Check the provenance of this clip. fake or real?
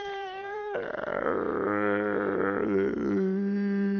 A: fake